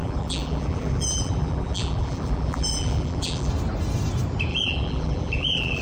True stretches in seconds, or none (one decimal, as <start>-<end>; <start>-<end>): 3.5-4.5

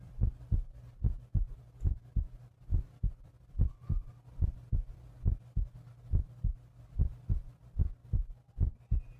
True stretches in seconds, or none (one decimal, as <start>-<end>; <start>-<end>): 8.0-9.2

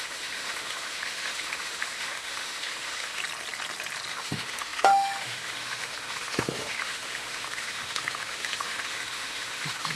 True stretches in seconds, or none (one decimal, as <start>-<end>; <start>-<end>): 3.2-4.1

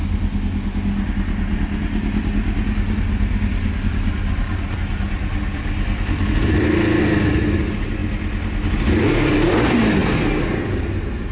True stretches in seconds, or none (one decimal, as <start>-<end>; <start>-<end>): 0.0-11.3